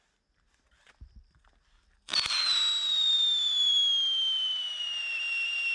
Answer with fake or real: real